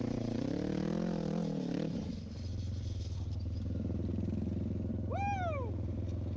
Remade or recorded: recorded